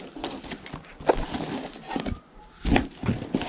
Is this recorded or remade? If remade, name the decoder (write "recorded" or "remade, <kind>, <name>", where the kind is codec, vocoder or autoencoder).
recorded